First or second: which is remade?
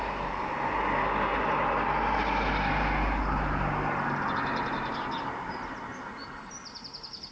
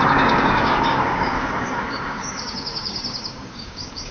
second